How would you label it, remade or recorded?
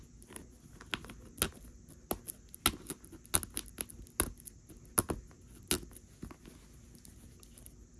recorded